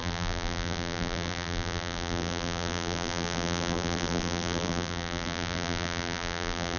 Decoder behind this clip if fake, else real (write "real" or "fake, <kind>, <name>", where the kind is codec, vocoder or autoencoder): fake, vocoder, BigVGAN v2